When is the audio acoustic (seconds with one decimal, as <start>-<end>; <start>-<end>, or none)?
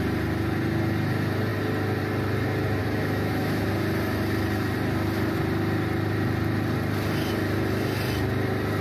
0.0-2.8; 3.6-8.8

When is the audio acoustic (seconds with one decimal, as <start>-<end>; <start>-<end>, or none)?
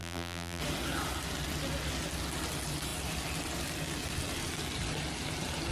0.6-5.7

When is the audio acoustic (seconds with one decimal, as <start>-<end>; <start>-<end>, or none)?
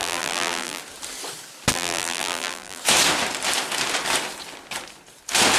0.8-1.7; 2.8-5.6